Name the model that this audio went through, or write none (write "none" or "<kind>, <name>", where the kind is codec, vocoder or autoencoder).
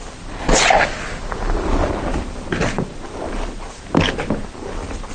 none